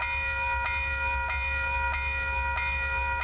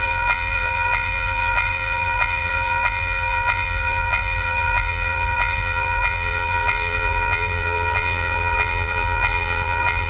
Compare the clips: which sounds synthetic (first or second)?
second